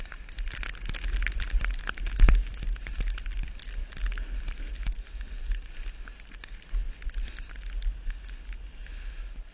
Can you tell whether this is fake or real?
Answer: real